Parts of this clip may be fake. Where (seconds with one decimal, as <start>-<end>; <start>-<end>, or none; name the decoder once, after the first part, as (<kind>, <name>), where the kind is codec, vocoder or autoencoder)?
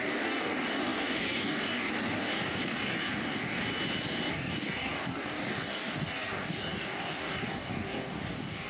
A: 0.0-3.7 (codec, DAC); 4.3-8.7